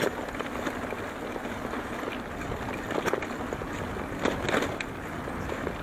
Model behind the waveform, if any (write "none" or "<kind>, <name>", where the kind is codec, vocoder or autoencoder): none